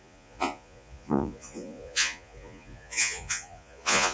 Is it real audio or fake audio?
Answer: fake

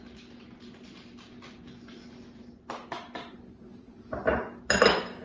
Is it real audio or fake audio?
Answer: real